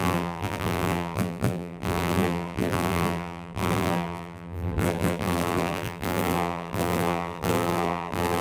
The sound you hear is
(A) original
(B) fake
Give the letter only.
B